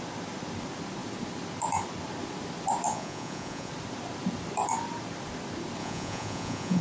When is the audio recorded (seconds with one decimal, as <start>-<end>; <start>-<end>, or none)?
0.0-2.9; 3.7-5.8